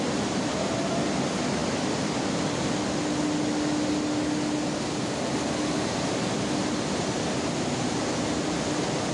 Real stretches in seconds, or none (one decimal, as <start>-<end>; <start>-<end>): 0.0-1.6; 2.6-9.1